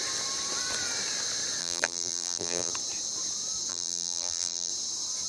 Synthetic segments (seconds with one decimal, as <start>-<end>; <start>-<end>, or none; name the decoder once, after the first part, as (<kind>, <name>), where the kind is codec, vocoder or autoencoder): 1.6-2.7 (vocoder, BigVGAN v2); 3.7-4.7